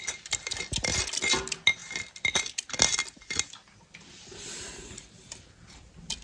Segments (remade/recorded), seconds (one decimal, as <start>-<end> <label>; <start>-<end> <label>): 0.0-6.2 recorded